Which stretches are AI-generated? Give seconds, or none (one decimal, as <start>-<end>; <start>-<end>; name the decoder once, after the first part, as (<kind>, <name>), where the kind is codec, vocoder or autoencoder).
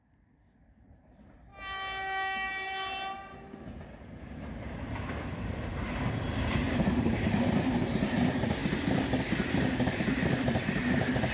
0.0-1.5 (vocoder, BigVGAN v2); 5.3-5.7; 6.6-8.6; 9.2-11.3